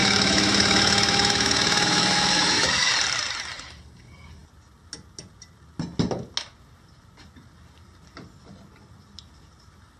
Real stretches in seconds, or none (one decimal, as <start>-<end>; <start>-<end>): 2.9-10.0